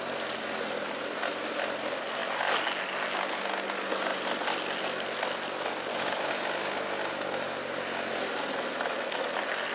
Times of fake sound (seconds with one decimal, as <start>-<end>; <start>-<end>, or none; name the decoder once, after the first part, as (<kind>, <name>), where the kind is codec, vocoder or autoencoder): 5.9-6.4 (autoencoder, DAC-VAE)